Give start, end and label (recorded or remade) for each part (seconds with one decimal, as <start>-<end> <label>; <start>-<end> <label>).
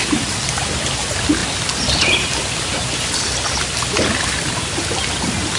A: 0.0-5.6 recorded